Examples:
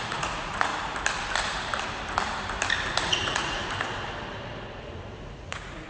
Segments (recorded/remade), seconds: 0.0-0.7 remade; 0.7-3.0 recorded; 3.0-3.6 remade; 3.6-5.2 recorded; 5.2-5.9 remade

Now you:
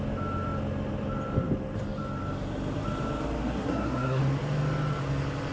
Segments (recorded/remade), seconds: 0.0-3.4 recorded; 3.4-4.2 remade; 4.2-5.5 recorded

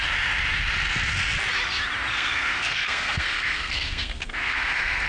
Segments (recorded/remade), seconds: 0.0-2.1 recorded; 2.1-5.1 remade

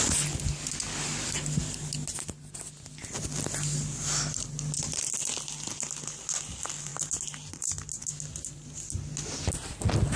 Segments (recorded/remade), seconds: 0.0-10.2 recorded

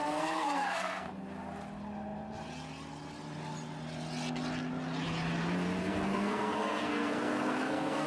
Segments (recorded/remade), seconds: 0.0-1.1 remade; 1.1-5.8 recorded; 5.8-8.1 remade